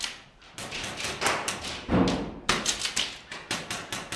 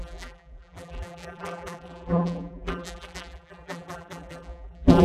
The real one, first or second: first